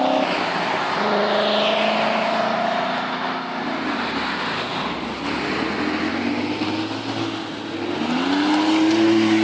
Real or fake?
real